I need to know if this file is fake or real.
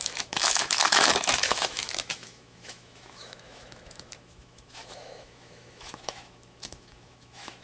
fake